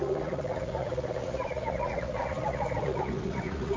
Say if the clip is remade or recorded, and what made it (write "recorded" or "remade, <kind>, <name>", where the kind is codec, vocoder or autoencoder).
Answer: remade, vocoder, Vocos